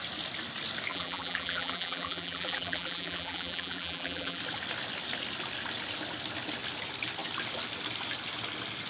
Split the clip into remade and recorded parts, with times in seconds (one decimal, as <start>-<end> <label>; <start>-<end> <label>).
0.0-0.9 recorded; 0.9-4.4 remade; 4.4-8.9 recorded